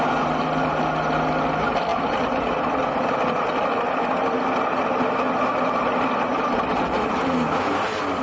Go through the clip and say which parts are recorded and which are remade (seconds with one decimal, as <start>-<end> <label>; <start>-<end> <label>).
0.0-6.3 recorded; 6.3-7.1 remade; 7.1-8.2 recorded